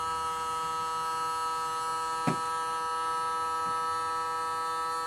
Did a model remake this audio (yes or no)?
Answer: no